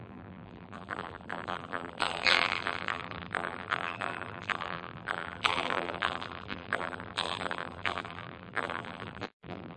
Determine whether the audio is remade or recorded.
remade